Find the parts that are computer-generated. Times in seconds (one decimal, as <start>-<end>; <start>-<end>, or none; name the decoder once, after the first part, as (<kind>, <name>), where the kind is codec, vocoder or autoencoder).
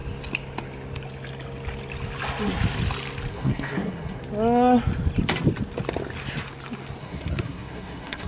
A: 3.3-4.2 (codec, SNAC); 7.0-8.3